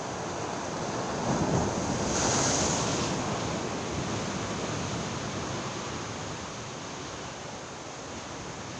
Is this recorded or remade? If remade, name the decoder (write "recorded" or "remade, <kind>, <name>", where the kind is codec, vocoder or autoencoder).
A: recorded